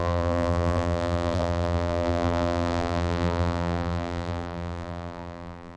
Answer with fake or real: fake